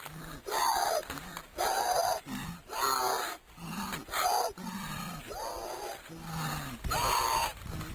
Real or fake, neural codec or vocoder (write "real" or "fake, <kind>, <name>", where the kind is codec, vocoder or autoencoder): real